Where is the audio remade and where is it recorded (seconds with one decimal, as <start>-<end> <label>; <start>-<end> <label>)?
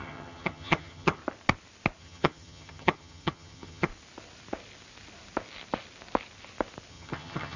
0.0-1.2 remade; 1.2-2.0 recorded; 2.0-3.9 remade; 3.9-6.9 recorded; 6.9-7.6 remade